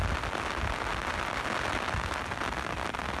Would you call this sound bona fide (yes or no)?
yes